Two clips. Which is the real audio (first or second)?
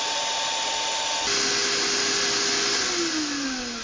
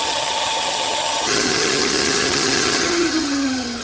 first